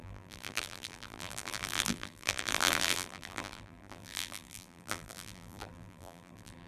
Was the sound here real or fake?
fake